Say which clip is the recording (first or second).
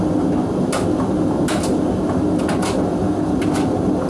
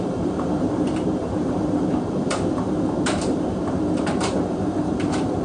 first